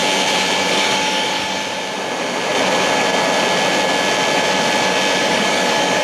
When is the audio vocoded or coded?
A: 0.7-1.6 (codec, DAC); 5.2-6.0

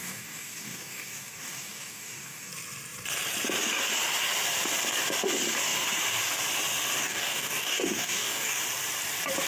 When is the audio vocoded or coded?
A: 0.0-2.5 (codec, DAC); 7.0-8.6

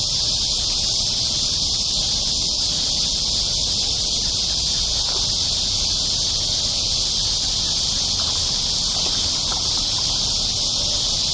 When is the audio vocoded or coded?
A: none

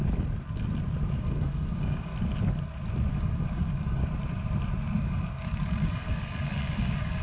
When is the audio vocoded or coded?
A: 1.2-2.1 (codec, DAC); 3.1-4.0; 5.0-7.2

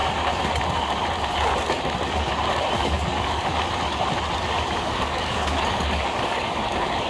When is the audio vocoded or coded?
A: 2.7-3.5 (codec, DAC); 4.7-7.1

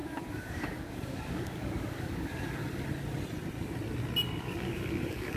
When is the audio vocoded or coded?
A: 0.0-2.6 (codec, DAC); 4.4-5.4